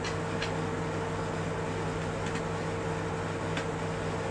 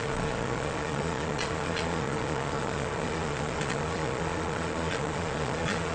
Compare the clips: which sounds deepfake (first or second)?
second